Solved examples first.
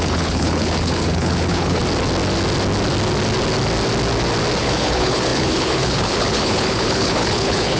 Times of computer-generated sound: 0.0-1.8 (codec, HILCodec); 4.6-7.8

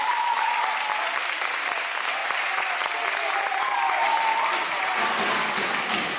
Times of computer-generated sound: 2.2-2.7 (vocoder, Vocos)

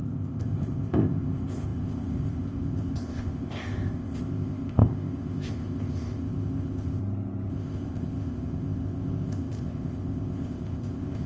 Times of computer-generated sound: 0.0-7.0 (codec, ZipCodec); 7.5-11.3

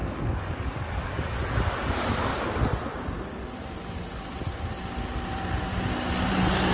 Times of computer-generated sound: 0.0-2.3 (codec, DAC); 6.3-6.7

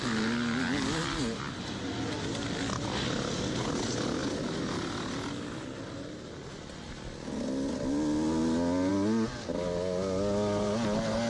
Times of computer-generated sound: none

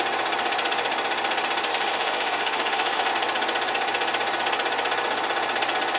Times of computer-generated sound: 1.7-3.1 (autoencoder, DAC-VAE)

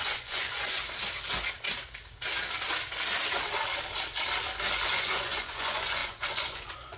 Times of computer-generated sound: 0.0-0.8 (vocoder, Vocos); 4.9-7.0